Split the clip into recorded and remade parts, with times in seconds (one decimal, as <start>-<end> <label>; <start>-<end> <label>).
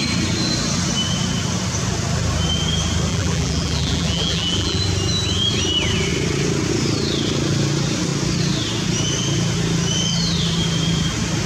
0.0-3.1 recorded; 3.1-4.8 remade; 4.8-11.5 recorded